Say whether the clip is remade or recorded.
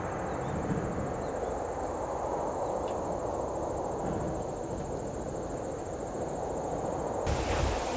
recorded